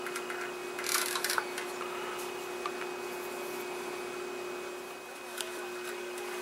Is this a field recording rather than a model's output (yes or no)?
yes